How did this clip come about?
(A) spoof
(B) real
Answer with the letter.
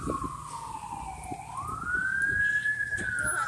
B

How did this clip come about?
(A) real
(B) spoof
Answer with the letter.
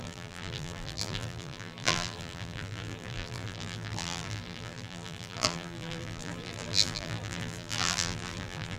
B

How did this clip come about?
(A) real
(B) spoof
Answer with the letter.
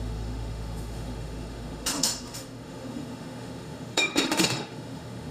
B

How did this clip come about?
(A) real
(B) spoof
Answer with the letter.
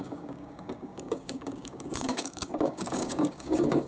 B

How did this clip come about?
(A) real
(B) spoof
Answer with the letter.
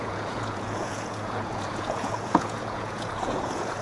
B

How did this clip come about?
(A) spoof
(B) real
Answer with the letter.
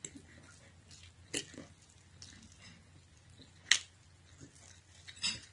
B